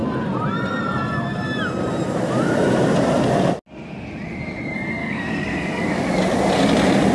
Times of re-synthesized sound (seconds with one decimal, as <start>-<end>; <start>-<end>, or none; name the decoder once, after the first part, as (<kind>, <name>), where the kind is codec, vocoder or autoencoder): 5.0-6.1 (codec, DAC)